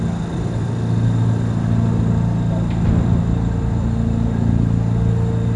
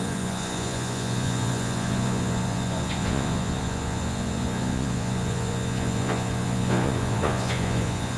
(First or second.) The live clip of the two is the first